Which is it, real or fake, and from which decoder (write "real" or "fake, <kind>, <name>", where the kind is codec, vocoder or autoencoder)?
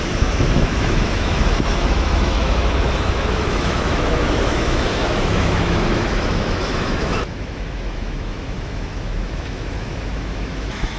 fake, autoencoder, DAC-VAE